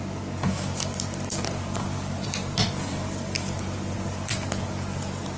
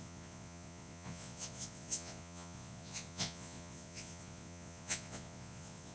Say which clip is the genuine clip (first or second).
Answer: first